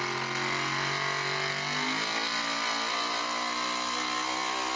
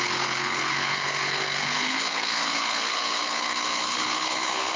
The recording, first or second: first